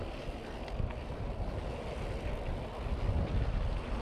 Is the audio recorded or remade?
recorded